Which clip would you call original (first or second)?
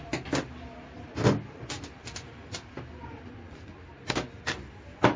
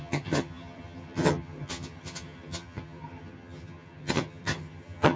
first